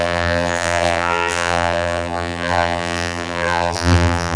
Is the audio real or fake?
fake